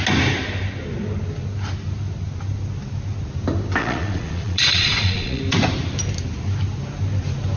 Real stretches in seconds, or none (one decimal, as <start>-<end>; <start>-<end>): 0.0-3.8; 5.4-7.6